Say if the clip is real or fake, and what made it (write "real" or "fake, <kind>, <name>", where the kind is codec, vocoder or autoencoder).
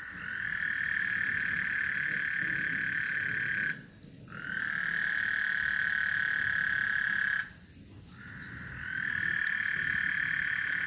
real